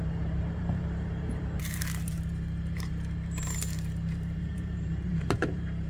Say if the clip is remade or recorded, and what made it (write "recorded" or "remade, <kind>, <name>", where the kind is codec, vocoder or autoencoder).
remade, vocoder, BigVGAN v2